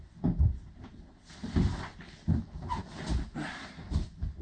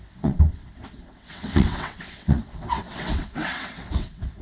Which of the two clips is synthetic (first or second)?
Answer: second